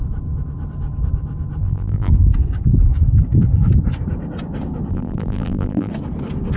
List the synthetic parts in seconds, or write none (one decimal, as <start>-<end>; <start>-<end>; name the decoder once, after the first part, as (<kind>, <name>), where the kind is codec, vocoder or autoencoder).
1.6-2.1 (vocoder, BigVGAN v2); 4.9-5.9